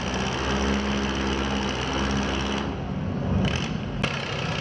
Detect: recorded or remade recorded